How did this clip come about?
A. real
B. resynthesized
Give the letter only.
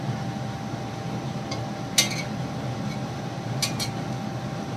A